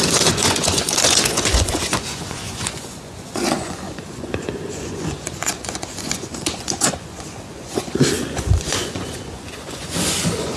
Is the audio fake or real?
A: fake